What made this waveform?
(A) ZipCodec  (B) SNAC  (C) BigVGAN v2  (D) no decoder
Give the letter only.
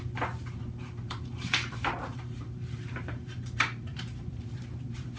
C